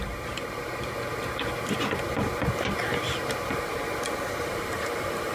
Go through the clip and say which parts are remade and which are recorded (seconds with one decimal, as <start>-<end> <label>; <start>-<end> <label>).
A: 0.0-3.7 remade; 3.7-4.3 recorded; 4.3-5.3 remade